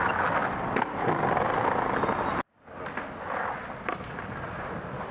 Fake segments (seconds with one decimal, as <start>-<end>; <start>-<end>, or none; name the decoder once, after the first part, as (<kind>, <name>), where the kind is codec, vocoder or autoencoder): none